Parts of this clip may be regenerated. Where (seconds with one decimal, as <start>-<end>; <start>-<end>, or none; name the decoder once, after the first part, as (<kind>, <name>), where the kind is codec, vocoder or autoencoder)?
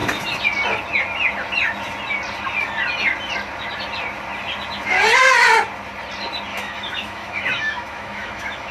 6.5-8.7 (autoencoder, DAC-VAE)